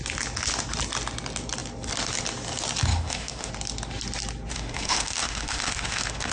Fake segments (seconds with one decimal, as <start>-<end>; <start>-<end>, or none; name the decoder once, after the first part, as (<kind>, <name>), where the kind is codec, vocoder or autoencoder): 2.9-3.5 (autoencoder, DAC-VAE); 4.5-6.3